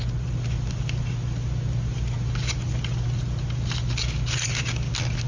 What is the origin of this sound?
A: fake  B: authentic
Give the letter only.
B